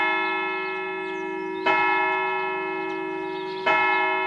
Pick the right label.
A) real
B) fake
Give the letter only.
A